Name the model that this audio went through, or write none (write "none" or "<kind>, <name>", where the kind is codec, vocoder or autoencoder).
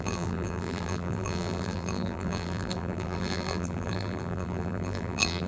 vocoder, BigVGAN v2